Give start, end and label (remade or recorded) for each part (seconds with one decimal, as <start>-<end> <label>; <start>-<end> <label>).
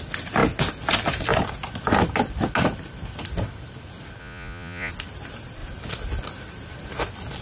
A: 0.0-4.2 recorded; 4.2-4.9 remade; 4.9-7.4 recorded